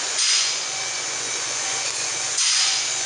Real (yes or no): no